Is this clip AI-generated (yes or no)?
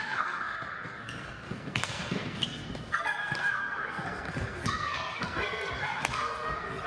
yes